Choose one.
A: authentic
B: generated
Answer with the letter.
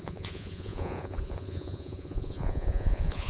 B